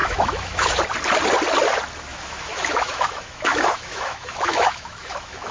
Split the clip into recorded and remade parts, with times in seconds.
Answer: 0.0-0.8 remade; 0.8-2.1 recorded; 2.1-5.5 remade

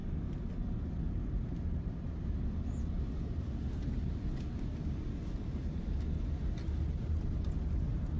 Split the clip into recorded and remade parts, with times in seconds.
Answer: 0.0-8.2 recorded

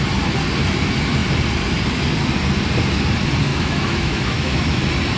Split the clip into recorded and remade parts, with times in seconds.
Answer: 0.0-3.5 recorded; 3.5-4.8 remade; 4.8-5.2 recorded

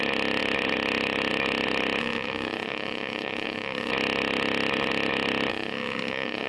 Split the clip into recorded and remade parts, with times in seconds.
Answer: 0.0-2.0 recorded; 2.0-3.9 remade; 3.9-5.5 recorded; 5.5-6.5 remade

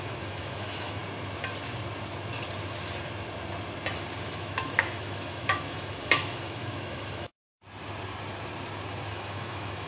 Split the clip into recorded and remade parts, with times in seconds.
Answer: 0.0-1.0 remade; 1.0-4.2 recorded; 4.2-7.5 remade; 7.5-9.1 recorded; 9.1-9.9 remade

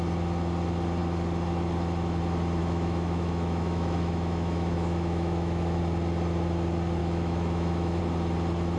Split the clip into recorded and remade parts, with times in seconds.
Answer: 0.0-2.6 recorded; 2.6-5.8 remade; 5.8-7.0 recorded; 7.0-8.0 remade; 8.0-8.8 recorded